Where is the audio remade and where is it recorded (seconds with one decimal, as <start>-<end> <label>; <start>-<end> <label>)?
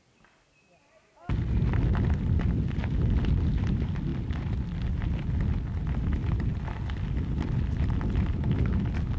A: 0.0-9.2 recorded